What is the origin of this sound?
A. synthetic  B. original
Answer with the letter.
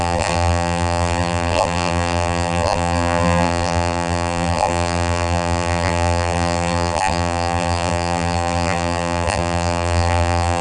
A